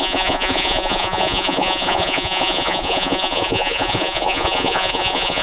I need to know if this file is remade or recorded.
remade